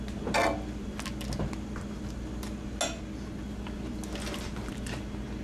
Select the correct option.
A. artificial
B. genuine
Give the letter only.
B